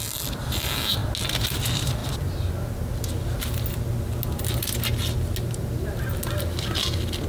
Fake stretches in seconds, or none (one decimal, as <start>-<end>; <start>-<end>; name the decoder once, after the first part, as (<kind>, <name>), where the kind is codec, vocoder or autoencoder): none